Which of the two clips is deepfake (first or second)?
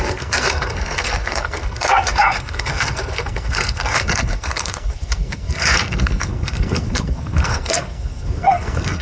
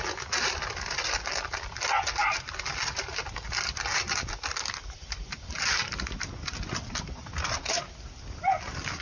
first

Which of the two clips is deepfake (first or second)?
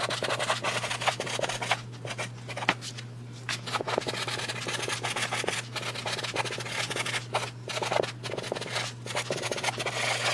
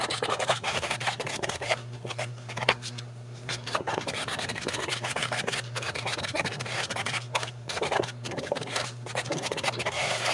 second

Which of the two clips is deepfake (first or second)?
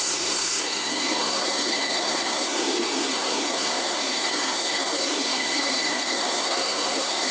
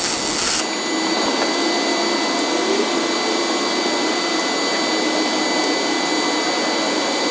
first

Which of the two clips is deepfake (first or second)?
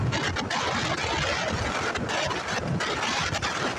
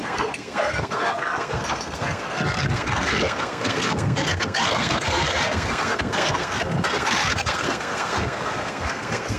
second